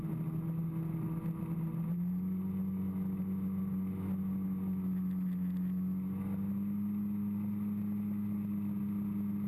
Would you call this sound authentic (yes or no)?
yes